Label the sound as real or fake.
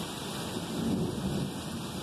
real